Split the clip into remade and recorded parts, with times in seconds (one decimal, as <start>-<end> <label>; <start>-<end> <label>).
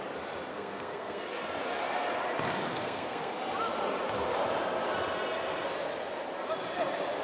0.0-0.5 recorded; 0.5-1.2 remade; 1.2-2.7 recorded; 2.7-3.3 remade; 3.3-7.2 recorded